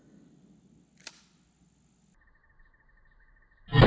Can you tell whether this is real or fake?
real